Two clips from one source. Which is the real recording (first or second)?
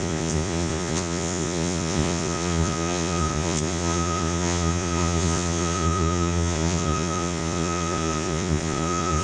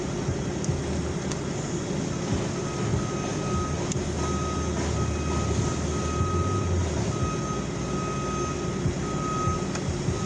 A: second